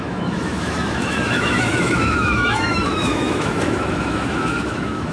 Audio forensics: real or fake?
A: fake